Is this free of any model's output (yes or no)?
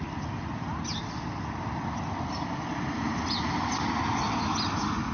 yes